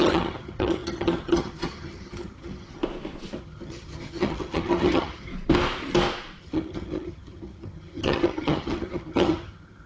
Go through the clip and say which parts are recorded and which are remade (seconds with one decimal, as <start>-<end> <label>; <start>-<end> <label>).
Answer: 0.0-2.8 remade; 2.8-3.4 recorded; 3.4-5.3 remade; 5.3-6.4 recorded; 6.4-9.9 remade